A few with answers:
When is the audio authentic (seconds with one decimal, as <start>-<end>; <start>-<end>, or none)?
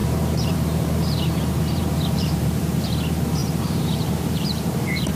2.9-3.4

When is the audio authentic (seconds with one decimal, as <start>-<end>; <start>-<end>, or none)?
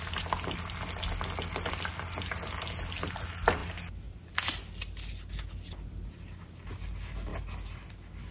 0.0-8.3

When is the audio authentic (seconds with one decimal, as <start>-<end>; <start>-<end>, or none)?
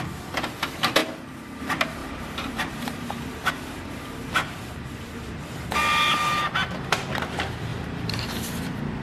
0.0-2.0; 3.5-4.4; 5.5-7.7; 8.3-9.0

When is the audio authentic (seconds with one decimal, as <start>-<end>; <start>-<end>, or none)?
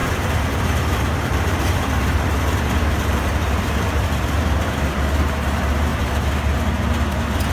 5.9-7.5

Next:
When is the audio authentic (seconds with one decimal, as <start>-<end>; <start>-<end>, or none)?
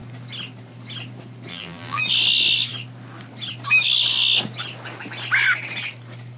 0.0-1.5; 2.0-6.4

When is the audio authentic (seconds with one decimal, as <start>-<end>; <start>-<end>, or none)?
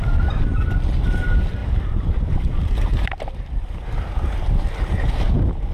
0.0-1.6; 4.1-5.7